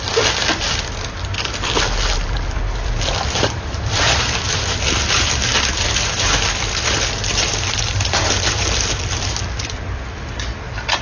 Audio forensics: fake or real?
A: fake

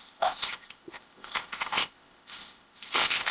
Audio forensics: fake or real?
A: fake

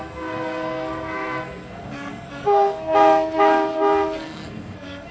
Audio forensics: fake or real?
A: fake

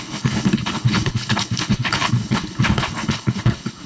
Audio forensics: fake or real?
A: fake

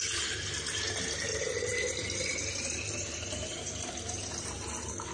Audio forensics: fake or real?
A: fake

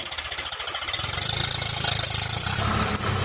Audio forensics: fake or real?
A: fake